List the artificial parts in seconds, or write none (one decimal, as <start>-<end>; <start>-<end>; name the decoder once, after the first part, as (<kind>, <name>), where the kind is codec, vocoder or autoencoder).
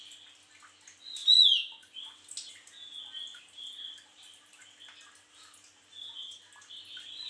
3.3-4.6 (vocoder, BigVGAN v2); 6.2-6.8